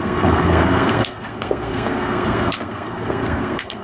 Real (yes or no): no